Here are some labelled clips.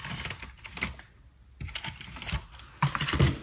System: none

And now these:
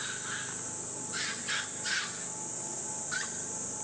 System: none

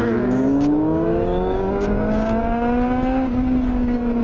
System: codec, DAC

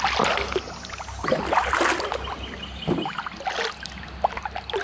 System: none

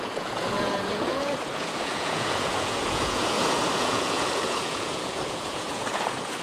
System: vocoder, Vocos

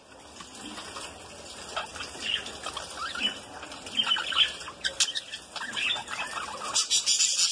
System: none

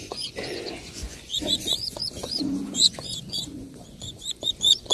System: vocoder, Vocos